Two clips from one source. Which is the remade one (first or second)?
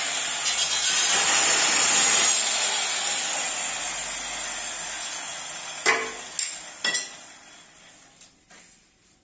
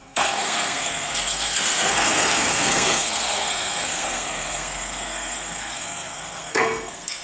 second